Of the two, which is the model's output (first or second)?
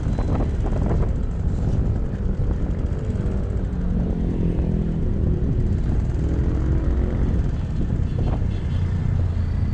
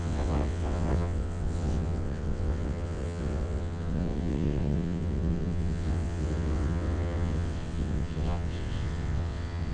second